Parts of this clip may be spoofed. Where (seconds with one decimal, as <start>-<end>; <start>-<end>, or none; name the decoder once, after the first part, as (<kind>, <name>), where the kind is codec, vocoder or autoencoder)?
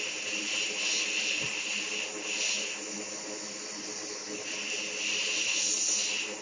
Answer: none